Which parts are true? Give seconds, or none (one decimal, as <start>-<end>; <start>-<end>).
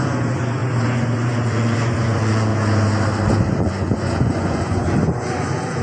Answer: 2.5-3.6